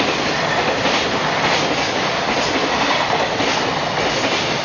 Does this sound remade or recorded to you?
recorded